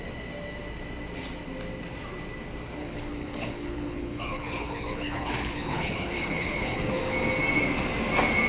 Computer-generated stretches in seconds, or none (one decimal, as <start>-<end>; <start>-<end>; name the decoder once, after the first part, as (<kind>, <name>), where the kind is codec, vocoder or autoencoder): 2.8-7.0 (codec, HILCodec)